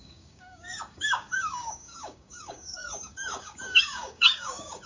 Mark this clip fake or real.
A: fake